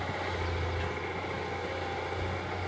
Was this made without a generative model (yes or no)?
yes